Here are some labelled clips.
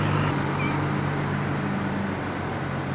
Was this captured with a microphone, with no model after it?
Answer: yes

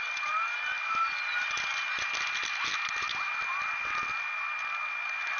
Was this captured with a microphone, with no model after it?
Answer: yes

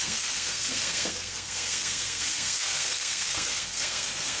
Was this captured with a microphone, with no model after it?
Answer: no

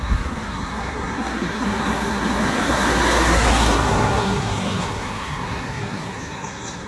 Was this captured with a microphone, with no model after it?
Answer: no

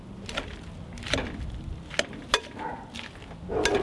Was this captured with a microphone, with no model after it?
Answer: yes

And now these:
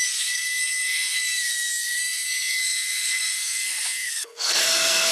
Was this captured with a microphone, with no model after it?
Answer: no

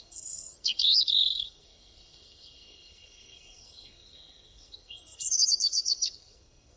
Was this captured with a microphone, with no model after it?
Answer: no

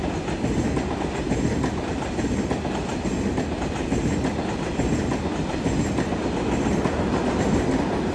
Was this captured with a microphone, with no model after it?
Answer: yes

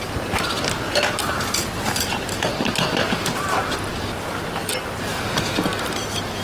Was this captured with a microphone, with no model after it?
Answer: yes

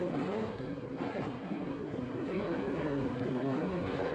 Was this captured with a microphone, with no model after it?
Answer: no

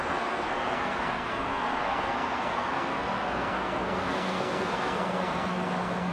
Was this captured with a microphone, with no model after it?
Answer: no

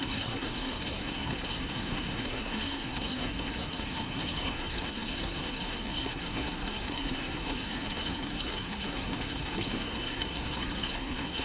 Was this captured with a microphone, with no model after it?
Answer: no